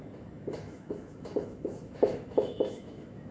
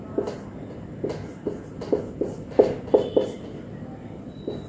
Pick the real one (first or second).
second